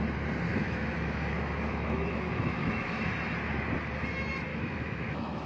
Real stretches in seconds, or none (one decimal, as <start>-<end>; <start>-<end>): 0.0-0.5; 3.1-4.5